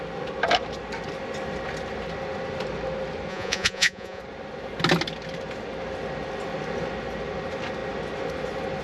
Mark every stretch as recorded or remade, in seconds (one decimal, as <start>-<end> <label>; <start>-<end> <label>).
0.0-3.3 recorded; 3.3-4.2 remade; 4.2-8.8 recorded

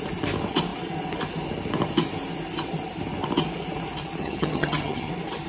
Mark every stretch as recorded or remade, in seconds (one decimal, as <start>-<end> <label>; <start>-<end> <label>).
0.0-4.2 recorded; 4.2-5.1 remade; 5.1-5.5 recorded

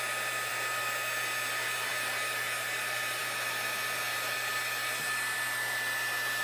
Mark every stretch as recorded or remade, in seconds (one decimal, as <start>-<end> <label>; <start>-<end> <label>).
0.0-6.4 recorded

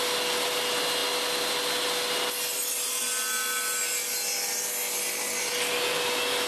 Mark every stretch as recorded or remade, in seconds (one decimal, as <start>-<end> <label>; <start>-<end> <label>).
0.0-6.5 recorded

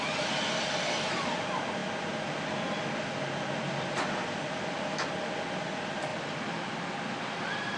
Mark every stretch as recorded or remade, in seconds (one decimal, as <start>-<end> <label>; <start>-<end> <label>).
0.0-7.8 recorded

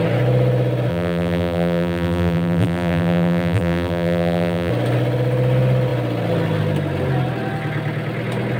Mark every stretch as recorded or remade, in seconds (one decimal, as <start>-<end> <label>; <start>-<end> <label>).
0.0-0.9 recorded; 0.9-4.7 remade; 4.7-8.6 recorded